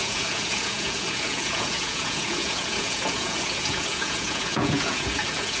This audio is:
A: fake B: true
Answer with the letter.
A